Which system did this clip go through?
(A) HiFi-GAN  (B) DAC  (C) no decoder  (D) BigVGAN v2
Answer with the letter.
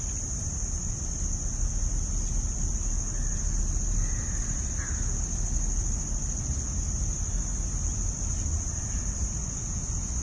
C